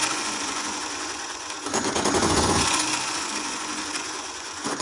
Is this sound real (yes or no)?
no